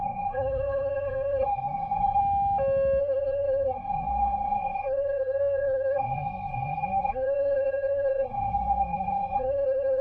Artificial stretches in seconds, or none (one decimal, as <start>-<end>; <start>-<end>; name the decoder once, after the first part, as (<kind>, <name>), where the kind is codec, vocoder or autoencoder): 0.0-2.2 (codec, SNAC); 3.0-10.0